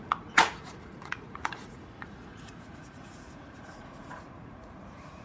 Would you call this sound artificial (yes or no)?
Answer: yes